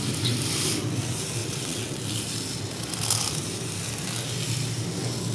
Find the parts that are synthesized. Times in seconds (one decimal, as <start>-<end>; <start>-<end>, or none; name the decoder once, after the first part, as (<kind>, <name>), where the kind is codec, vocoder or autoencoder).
1.4-2.0 (vocoder, WaveNeXt)